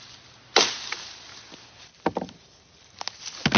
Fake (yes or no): no